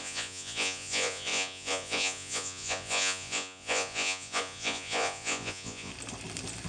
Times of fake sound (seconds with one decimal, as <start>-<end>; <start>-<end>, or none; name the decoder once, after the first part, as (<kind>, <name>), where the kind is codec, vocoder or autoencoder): 0.0-5.9 (vocoder, Vocos)